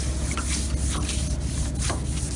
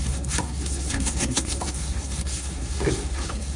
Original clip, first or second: first